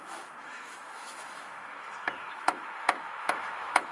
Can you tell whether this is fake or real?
fake